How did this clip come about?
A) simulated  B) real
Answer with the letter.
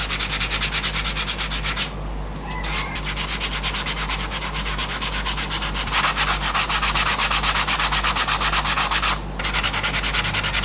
B